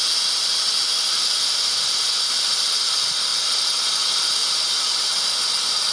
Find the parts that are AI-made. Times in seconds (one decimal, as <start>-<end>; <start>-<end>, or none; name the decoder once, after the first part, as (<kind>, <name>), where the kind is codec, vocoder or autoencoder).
4.4-5.2 (vocoder, BigVGAN v2)